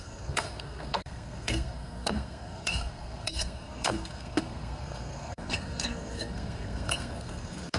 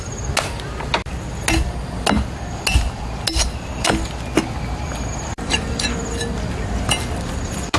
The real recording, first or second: second